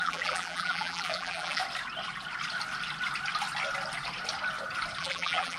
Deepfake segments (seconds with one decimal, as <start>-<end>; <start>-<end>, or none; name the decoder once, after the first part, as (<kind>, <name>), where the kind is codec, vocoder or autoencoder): 0.0-1.6 (vocoder, BigVGAN v2); 5.0-5.6